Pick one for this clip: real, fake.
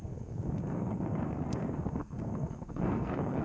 fake